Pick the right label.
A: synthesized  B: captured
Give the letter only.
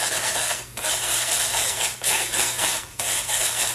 A